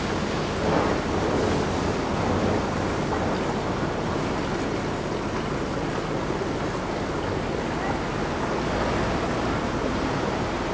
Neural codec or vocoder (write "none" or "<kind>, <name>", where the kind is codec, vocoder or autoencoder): none